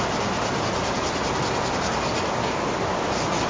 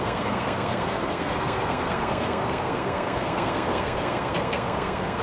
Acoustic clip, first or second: first